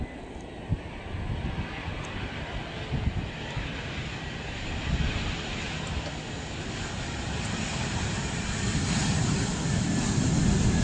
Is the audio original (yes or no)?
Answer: yes